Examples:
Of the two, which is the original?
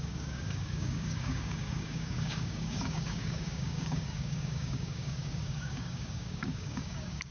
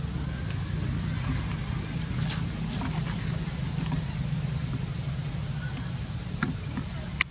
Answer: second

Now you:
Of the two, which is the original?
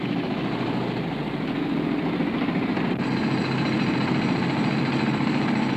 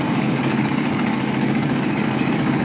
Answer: first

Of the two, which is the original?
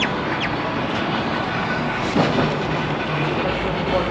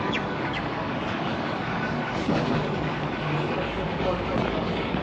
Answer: first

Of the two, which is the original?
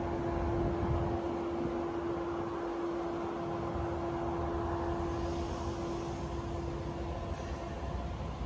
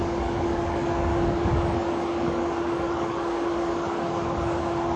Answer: first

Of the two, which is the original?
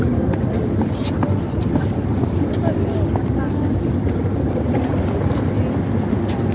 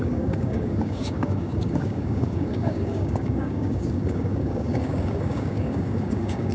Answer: first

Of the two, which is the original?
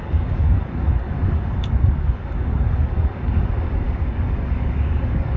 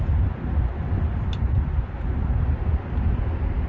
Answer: second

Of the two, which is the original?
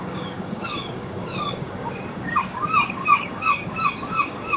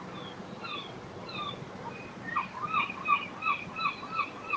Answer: second